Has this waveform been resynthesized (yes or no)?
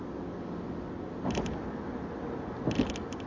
no